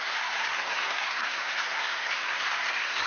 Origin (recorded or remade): remade